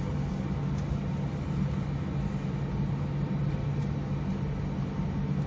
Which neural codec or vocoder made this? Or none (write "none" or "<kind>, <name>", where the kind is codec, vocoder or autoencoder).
none